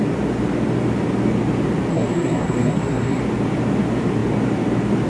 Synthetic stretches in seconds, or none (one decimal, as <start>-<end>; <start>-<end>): 1.9-3.2